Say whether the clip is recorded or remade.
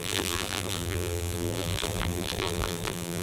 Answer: remade